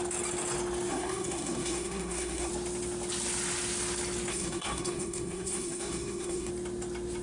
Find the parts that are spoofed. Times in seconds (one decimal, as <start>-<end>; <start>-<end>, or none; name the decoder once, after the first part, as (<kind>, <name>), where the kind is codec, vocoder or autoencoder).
0.9-2.5 (codec, SNAC); 4.3-6.5